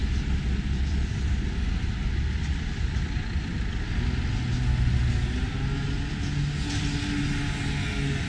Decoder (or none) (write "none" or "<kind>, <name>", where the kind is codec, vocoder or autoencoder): none